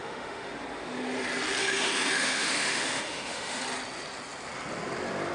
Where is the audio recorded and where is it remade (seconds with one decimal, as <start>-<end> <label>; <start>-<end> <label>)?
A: 0.0-0.5 remade; 0.5-1.6 recorded; 1.6-3.6 remade; 3.6-5.3 recorded